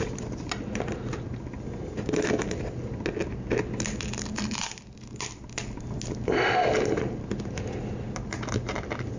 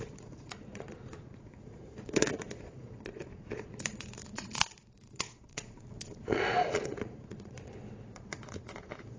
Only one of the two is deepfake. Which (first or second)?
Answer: second